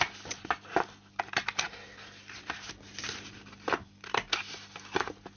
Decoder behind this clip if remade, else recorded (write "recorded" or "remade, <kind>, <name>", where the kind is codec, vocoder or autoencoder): recorded